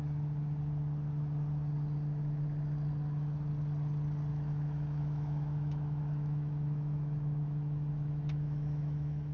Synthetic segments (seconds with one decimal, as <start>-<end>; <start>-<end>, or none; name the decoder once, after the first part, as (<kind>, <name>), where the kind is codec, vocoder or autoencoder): 4.3-9.3 (autoencoder, DAC-VAE)